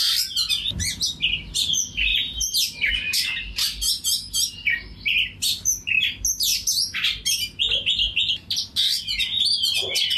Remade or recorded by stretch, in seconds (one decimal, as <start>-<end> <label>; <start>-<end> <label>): 0.0-2.1 recorded; 2.1-2.9 remade; 2.9-10.2 recorded